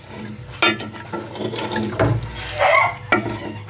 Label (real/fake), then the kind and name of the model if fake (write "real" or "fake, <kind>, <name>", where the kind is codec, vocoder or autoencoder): real